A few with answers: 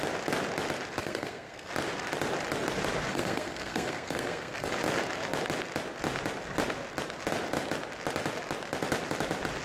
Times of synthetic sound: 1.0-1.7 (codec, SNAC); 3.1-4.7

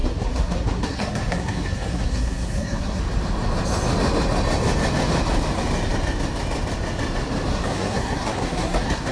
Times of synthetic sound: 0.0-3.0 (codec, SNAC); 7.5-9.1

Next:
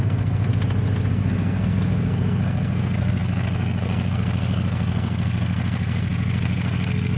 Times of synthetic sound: 0.0-0.5 (codec, SNAC); 1.1-7.2

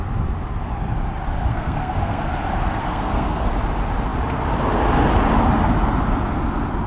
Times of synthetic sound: 1.5-2.2 (codec, SNAC); 2.8-3.4

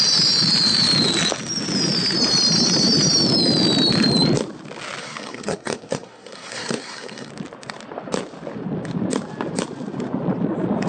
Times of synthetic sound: 5.0-7.3 (codec, SNAC)